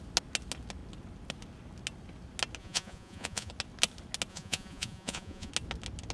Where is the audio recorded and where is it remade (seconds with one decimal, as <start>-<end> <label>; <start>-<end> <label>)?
0.0-2.6 recorded; 2.6-3.5 remade; 3.5-4.3 recorded; 4.3-5.5 remade; 5.5-6.1 recorded